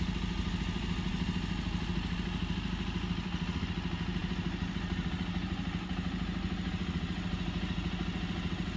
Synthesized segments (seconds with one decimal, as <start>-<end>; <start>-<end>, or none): none